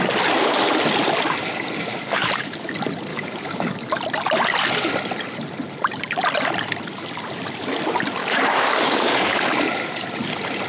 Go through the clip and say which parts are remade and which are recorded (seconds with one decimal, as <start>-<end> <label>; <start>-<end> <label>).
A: 0.0-1.9 recorded; 1.9-2.7 remade; 2.7-3.1 recorded; 3.1-3.9 remade; 3.9-8.2 recorded; 8.2-9.4 remade; 9.4-10.7 recorded